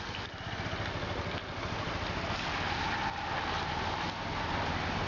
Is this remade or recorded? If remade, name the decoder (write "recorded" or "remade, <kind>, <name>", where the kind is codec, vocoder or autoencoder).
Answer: recorded